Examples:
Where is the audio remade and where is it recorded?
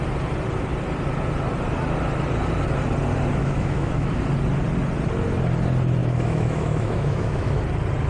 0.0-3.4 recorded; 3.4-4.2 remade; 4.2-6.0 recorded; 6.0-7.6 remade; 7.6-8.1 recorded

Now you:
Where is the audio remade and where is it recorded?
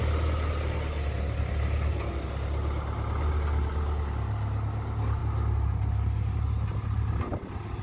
0.0-7.8 recorded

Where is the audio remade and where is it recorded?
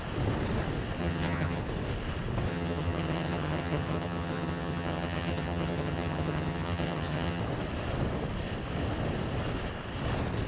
0.0-1.0 recorded; 1.0-1.6 remade; 1.6-2.5 recorded; 2.5-7.4 remade; 7.4-10.5 recorded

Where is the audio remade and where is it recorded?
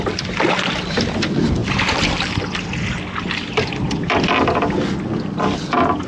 0.0-6.1 recorded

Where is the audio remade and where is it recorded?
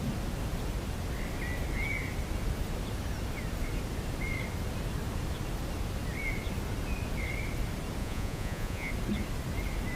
0.0-8.0 recorded; 8.0-8.9 remade; 8.9-10.0 recorded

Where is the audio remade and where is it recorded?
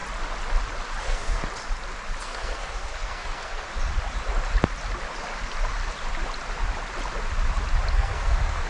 0.0-1.0 recorded; 1.0-1.4 remade; 1.4-2.2 recorded; 2.2-3.7 remade; 3.7-7.9 recorded; 7.9-8.7 remade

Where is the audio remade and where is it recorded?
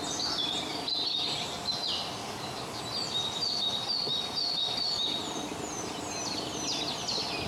0.0-2.2 recorded; 2.2-2.8 remade; 2.8-7.5 recorded